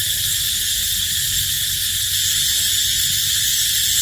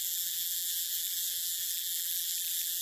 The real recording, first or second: first